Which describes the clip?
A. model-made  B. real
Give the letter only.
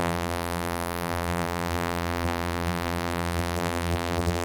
A